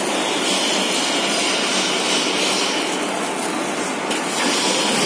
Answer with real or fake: real